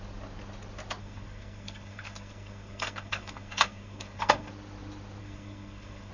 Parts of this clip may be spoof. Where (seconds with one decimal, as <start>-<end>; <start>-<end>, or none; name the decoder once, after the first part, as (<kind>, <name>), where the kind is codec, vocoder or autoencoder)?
1.0-4.5 (codec, SNAC); 5.2-6.1